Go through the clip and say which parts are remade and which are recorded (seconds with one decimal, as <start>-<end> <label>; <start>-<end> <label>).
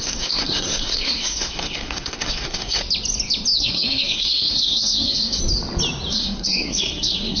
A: 0.0-2.8 remade; 2.8-3.6 recorded; 3.6-5.4 remade; 5.4-6.1 recorded; 6.1-7.4 remade